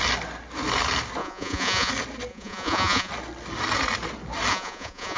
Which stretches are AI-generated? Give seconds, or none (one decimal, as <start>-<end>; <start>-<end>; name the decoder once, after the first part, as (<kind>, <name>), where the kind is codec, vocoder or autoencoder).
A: 1.2-1.9 (vocoder, Vocos); 2.3-3.1; 4.5-5.2